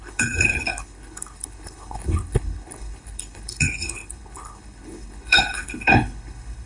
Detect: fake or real fake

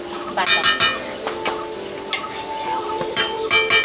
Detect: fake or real real